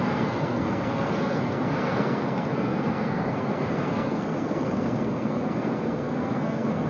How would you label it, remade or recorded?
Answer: remade